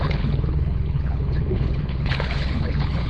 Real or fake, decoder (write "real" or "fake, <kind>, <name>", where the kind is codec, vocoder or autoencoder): fake, codec, HILCodec